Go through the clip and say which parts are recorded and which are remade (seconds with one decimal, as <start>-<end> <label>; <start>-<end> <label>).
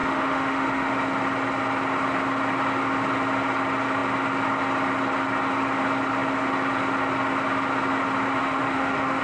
0.0-0.9 remade; 0.9-8.4 recorded; 8.4-9.2 remade